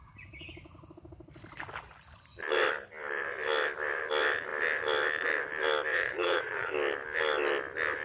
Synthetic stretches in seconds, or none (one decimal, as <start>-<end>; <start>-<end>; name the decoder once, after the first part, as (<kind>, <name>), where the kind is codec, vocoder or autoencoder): 5.9-6.7 (vocoder, Vocos)